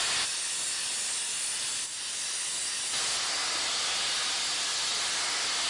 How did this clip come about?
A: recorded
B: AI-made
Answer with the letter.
A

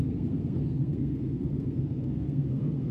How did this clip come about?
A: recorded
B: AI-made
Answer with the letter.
B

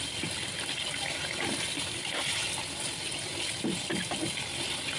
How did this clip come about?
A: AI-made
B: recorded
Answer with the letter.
B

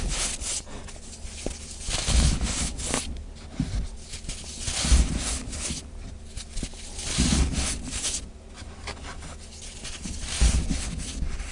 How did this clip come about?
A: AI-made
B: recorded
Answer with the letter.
B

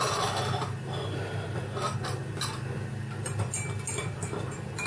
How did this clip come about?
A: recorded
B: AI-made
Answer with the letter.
A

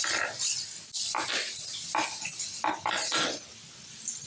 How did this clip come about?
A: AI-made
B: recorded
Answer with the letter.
B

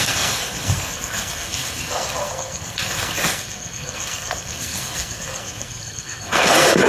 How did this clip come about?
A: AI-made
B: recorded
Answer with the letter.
A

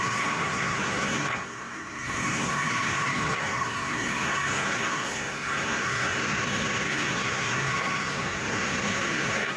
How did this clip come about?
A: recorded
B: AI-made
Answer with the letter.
B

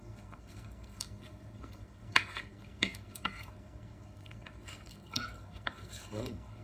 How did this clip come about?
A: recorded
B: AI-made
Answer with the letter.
B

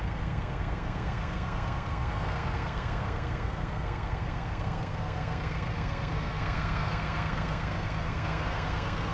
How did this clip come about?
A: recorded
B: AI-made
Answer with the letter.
B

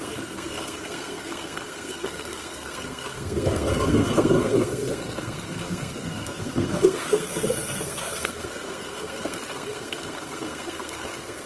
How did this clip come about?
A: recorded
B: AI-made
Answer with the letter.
B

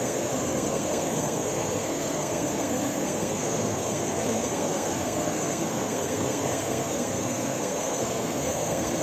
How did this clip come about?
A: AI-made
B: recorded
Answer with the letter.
A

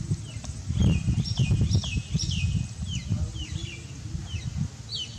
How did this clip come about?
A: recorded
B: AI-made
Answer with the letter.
A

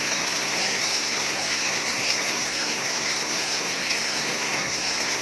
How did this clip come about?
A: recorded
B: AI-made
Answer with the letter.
B